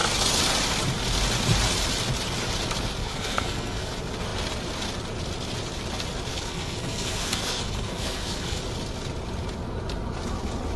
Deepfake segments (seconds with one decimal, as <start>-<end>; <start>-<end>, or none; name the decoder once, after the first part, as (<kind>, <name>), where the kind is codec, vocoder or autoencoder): 3.0-3.9 (codec, SNAC); 6.3-8.6